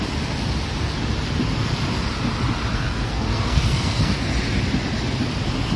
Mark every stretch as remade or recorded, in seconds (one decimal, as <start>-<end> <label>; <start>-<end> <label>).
0.0-2.7 recorded; 2.7-4.2 remade; 4.2-5.8 recorded